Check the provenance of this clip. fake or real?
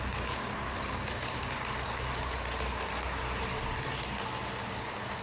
real